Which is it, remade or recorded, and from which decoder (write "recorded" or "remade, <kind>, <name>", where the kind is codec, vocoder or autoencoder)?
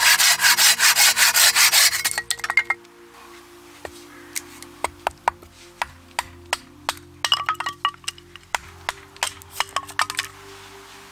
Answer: recorded